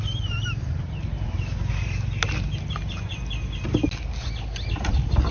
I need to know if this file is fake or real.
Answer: real